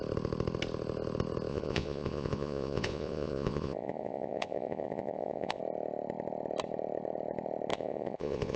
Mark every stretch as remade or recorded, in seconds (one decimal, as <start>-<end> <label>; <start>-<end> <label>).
0.0-1.5 recorded; 1.5-5.6 remade; 5.6-7.7 recorded; 7.7-8.6 remade